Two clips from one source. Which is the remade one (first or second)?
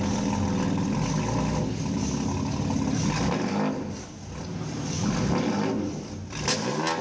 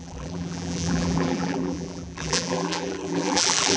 second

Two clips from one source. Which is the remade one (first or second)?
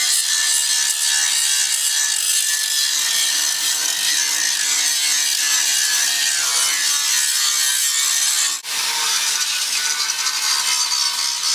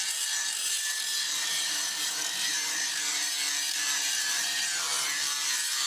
second